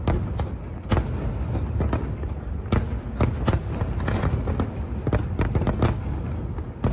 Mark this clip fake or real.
real